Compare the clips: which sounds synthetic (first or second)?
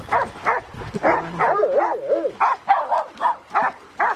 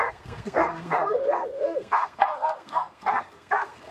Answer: second